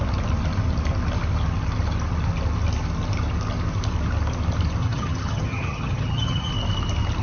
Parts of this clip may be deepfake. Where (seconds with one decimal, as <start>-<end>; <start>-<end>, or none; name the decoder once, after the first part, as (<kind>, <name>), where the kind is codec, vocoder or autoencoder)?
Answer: 4.8-6.5 (vocoder, HiFi-GAN)